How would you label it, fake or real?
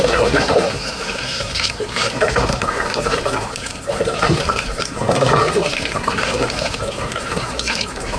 fake